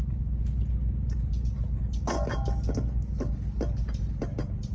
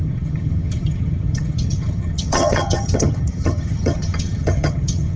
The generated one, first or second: second